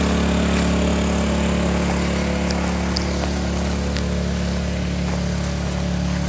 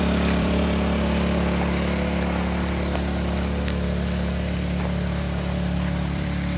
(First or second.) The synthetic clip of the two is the second